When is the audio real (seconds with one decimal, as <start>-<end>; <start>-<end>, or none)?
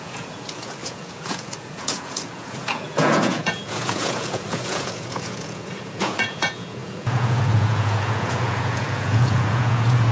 none